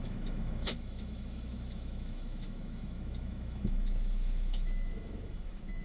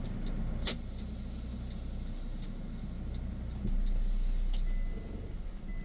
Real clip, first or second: second